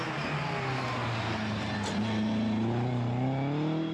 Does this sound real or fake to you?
real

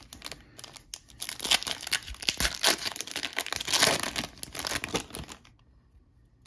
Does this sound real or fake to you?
real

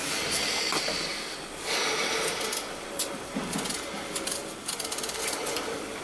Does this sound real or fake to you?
real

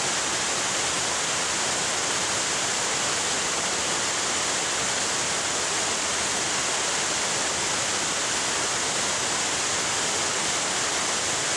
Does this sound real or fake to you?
real